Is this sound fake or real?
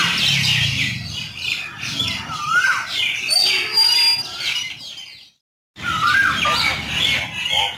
real